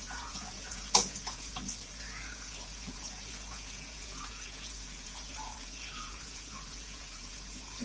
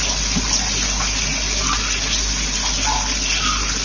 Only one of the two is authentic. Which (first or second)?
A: second